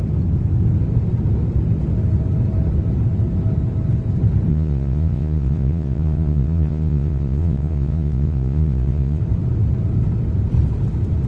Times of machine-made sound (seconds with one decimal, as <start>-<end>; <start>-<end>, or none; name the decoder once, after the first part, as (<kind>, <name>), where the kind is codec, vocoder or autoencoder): 4.5-9.2 (vocoder, Vocos)